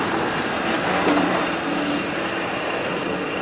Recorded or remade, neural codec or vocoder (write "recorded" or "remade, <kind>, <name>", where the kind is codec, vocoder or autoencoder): recorded